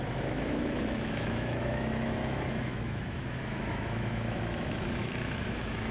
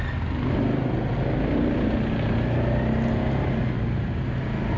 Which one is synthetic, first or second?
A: first